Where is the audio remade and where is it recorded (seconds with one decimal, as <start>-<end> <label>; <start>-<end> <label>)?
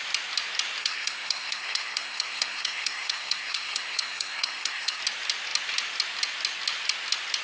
0.0-0.8 recorded; 0.8-5.0 remade; 5.0-7.4 recorded